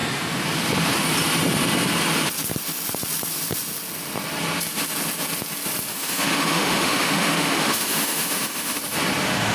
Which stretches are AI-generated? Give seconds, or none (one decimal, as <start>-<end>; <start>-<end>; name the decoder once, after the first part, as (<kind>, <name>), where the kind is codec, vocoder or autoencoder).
5.9-8.8 (autoencoder, DAC-VAE)